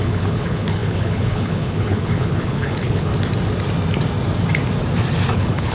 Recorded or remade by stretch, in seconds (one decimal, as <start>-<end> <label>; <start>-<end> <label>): 0.0-3.1 remade; 3.1-5.3 recorded; 5.3-5.7 remade